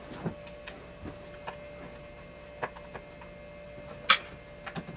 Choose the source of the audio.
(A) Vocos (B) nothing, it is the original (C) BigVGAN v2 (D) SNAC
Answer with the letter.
B